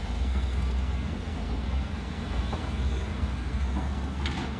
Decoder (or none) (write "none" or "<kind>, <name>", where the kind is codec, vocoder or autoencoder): codec, SNAC